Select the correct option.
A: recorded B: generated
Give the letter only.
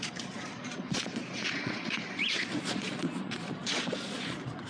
B